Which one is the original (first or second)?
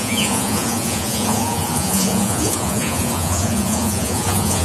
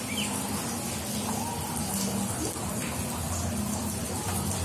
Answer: second